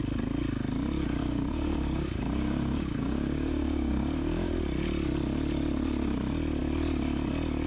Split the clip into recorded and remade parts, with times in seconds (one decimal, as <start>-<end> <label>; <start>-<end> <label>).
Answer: 0.0-1.2 recorded; 1.2-4.6 remade; 4.6-7.7 recorded